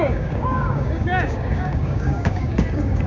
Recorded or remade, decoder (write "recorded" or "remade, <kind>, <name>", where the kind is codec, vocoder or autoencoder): remade, codec, DAC